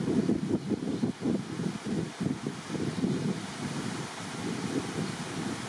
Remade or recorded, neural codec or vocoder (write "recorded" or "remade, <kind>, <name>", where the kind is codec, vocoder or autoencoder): recorded